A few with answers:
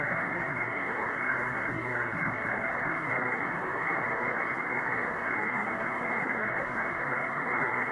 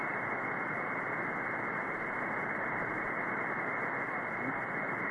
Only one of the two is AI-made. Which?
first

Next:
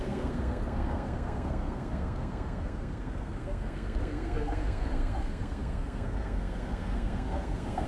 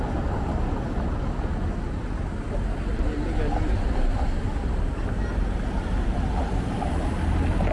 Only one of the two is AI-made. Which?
first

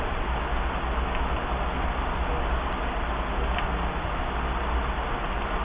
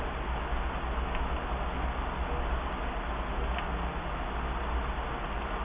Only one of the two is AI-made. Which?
first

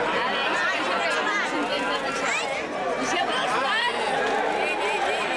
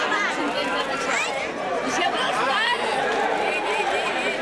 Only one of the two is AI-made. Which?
second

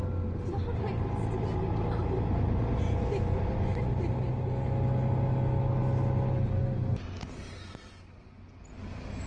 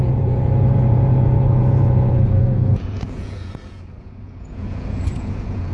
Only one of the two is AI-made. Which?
second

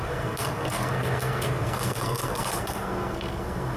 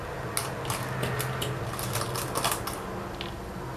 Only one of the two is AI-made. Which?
first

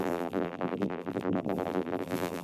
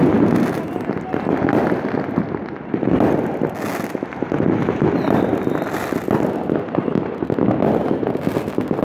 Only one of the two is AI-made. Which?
first